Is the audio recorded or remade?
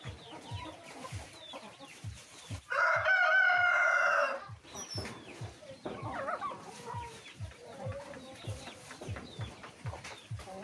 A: remade